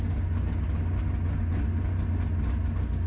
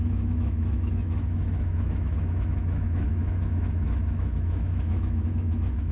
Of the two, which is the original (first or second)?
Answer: first